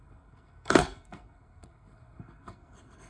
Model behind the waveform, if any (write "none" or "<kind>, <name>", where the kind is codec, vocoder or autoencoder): codec, SNAC